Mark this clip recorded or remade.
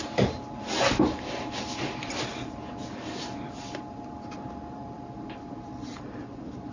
remade